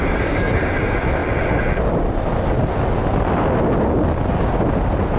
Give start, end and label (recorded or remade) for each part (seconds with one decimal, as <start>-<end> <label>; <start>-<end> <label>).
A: 0.0-1.2 remade; 1.2-4.3 recorded; 4.3-5.2 remade

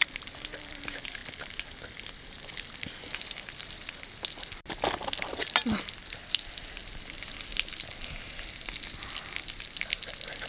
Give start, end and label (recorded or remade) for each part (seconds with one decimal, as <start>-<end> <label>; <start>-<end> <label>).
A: 0.0-10.5 recorded

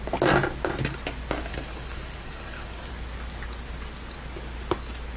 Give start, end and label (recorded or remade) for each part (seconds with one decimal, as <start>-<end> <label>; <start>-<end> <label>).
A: 0.0-1.5 recorded; 1.5-2.9 remade; 2.9-5.2 recorded

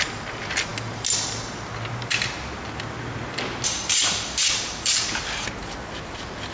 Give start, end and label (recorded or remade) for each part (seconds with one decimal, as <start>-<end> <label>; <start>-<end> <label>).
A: 0.0-6.5 recorded

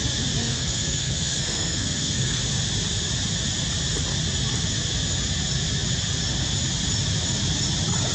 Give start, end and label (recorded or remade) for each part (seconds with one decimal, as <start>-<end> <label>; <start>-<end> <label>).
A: 0.0-0.4 recorded; 0.4-2.4 remade; 2.4-8.1 recorded

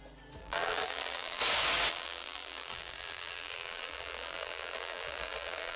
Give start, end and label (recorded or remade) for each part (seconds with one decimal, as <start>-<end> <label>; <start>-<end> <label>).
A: 0.0-0.4 recorded; 0.4-1.4 remade; 1.4-1.9 recorded; 1.9-5.8 remade